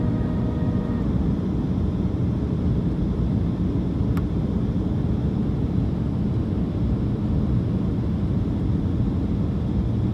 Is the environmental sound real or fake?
real